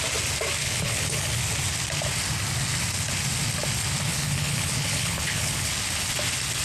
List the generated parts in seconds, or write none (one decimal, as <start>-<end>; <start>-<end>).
0.6-1.4; 4.1-5.7